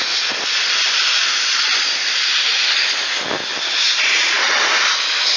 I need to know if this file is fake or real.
real